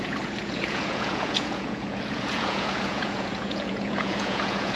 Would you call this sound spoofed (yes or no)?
yes